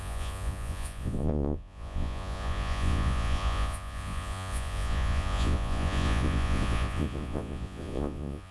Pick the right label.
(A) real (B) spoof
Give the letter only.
B